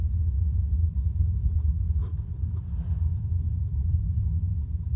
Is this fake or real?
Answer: real